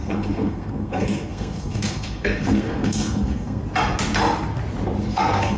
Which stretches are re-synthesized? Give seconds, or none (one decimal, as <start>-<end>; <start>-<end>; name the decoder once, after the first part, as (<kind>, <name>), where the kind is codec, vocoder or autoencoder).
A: 0.0-3.6 (codec, SNAC); 5.0-5.6